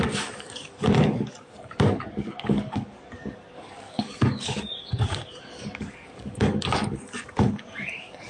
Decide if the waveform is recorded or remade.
remade